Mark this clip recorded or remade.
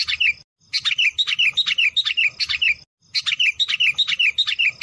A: recorded